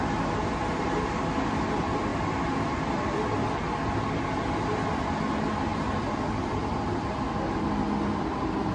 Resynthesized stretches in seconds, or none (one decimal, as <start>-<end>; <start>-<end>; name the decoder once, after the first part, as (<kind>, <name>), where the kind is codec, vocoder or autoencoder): none